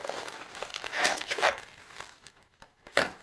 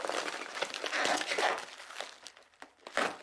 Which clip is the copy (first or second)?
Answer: first